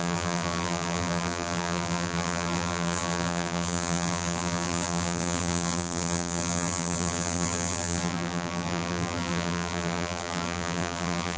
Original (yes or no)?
no